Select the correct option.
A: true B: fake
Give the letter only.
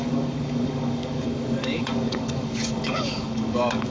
B